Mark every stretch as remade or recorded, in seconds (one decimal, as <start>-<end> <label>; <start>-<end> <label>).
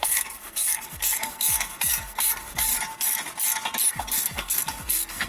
0.0-2.7 remade; 2.7-3.9 recorded; 3.9-5.3 remade